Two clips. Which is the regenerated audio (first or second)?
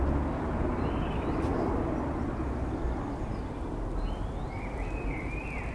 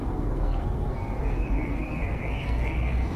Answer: second